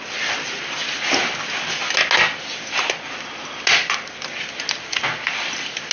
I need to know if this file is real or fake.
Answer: real